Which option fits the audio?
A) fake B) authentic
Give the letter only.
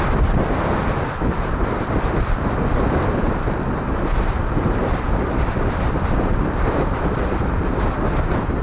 B